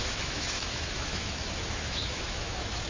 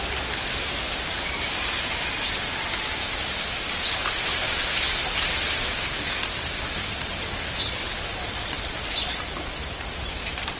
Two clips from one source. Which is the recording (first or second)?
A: second